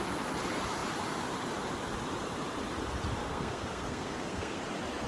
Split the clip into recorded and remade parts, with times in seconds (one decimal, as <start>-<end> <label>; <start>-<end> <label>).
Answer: 0.0-3.2 recorded; 3.2-4.6 remade; 4.6-5.1 recorded